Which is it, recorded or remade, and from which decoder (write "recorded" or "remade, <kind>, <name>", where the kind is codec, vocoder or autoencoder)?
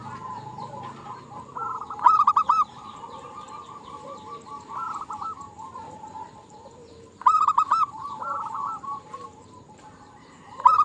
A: remade, vocoder, BigVGAN v2